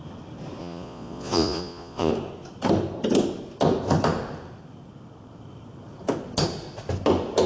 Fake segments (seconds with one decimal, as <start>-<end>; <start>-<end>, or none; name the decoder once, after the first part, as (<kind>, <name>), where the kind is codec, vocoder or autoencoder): 0.6-2.1 (vocoder, Vocos)